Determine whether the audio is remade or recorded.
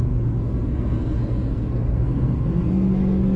remade